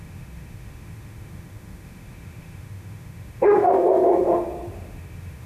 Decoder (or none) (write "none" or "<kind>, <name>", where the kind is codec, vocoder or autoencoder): autoencoder, DAC-VAE